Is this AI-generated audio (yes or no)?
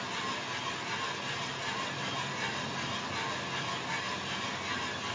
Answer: no